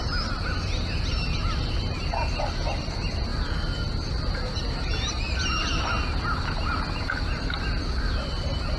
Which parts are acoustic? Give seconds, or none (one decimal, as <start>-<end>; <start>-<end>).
0.0-3.3; 5.1-8.8

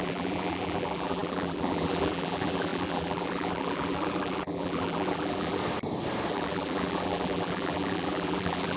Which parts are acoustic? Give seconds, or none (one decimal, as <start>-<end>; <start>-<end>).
5.6-6.3

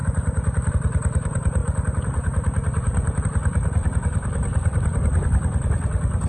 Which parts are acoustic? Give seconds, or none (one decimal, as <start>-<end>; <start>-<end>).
0.0-0.7; 1.6-3.2